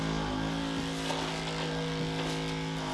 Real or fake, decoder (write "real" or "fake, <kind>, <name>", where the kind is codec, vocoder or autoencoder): real